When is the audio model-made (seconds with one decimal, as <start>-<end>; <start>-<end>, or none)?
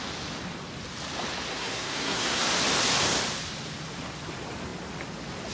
1.5-2.5